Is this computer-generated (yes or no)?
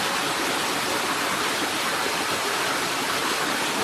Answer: no